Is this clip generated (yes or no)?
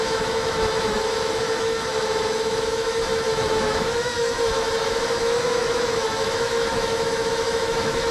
yes